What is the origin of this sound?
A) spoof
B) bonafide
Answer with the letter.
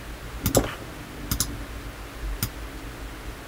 B